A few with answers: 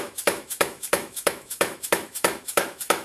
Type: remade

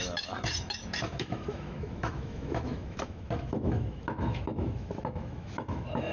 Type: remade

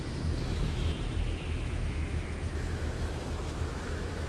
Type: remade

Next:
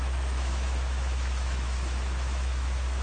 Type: remade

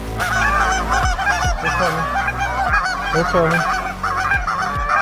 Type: recorded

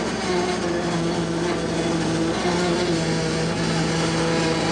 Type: recorded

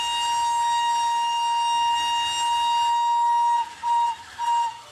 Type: recorded